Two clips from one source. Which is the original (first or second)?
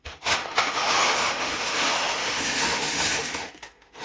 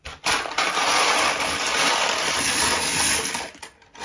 second